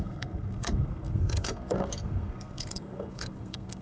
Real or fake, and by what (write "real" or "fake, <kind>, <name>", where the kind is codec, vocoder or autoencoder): fake, codec, SNAC